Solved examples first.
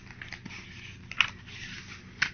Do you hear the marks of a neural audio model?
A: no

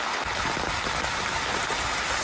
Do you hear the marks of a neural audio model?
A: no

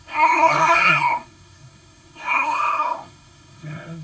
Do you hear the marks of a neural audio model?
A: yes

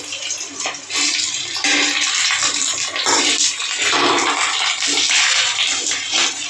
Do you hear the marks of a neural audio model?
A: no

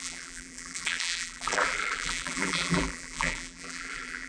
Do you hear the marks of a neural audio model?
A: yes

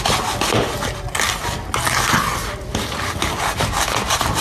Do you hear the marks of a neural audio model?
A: no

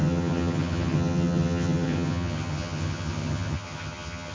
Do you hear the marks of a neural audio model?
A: yes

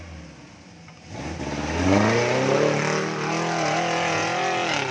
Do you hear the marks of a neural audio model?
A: no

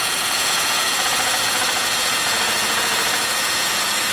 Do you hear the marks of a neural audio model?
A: yes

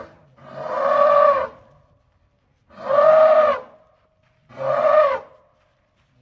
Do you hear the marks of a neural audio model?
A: no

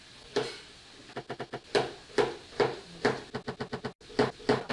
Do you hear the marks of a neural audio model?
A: no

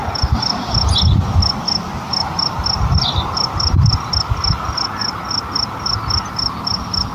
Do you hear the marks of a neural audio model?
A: no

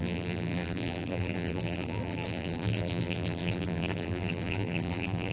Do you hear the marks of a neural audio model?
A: yes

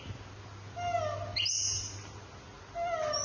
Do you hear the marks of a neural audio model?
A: no